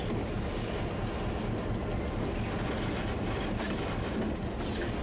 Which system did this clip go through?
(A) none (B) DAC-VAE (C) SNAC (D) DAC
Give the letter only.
A